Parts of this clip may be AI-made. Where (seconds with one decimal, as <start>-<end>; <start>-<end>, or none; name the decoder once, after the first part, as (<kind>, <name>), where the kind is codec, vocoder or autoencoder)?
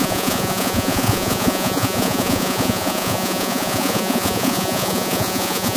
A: 0.0-5.8 (vocoder, Vocos)